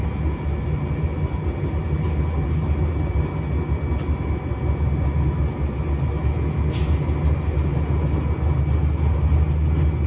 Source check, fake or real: real